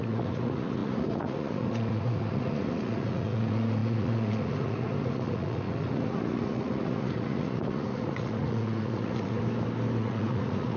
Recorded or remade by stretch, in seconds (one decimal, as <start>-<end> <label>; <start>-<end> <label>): 0.0-9.4 remade; 9.4-10.0 recorded; 10.0-10.8 remade